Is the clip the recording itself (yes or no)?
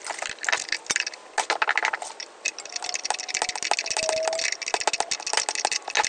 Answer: yes